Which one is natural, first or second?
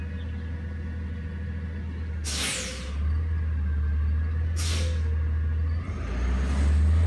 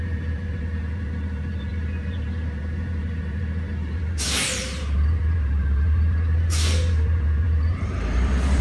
first